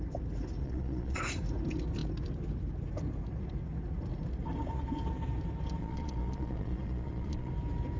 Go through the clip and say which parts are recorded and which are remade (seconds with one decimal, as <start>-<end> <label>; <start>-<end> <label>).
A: 0.0-0.6 recorded; 0.6-1.2 remade; 1.2-5.8 recorded; 5.8-7.5 remade; 7.5-8.0 recorded